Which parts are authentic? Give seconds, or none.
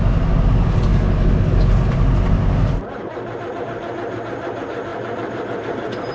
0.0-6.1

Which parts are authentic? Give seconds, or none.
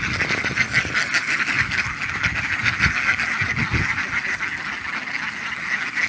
0.0-6.1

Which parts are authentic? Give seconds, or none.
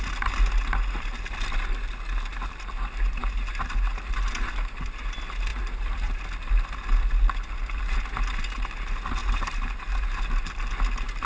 0.0-5.5; 6.2-9.2; 10.2-11.2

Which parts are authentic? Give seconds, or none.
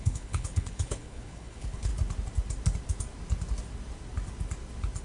1.9-5.0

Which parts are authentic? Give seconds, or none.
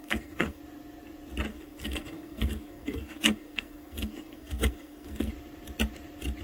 0.6-1.5; 5.3-6.4